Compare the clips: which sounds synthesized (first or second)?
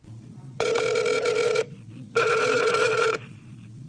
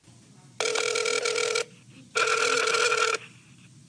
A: first